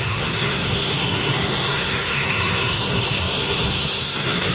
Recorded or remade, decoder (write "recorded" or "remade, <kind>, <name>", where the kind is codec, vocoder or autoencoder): remade, codec, SNAC